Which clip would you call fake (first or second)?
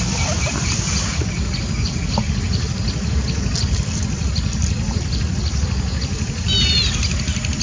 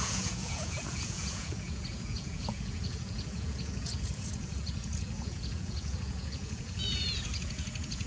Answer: second